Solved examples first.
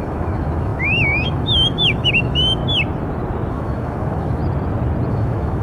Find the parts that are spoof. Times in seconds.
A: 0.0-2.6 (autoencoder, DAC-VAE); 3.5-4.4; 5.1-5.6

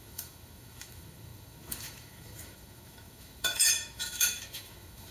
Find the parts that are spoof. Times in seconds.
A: 0.0-5.1 (autoencoder, DAC-VAE)

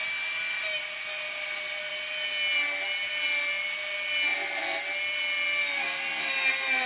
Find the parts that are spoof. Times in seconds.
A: none

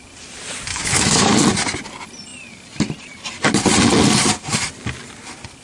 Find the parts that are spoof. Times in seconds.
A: 0.7-1.3 (autoencoder, DAC-VAE)

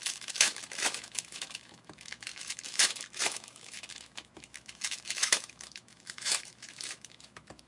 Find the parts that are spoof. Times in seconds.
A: 0.0-7.7 (autoencoder, DAC-VAE)